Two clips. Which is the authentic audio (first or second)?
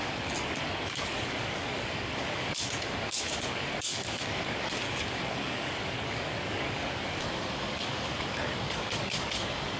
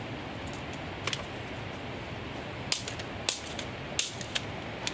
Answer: second